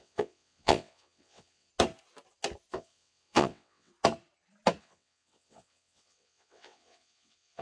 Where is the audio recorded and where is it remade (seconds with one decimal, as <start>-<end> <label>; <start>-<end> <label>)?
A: 0.0-1.7 remade; 1.7-2.7 recorded; 2.7-3.9 remade; 3.9-4.8 recorded; 4.8-7.6 remade